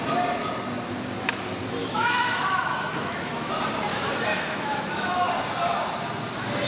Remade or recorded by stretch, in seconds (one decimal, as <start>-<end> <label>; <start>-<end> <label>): 0.0-1.8 recorded; 1.8-3.5 remade; 3.5-3.9 recorded; 3.9-5.3 remade; 5.3-6.7 recorded